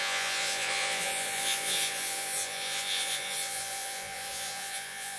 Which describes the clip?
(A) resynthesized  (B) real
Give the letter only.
A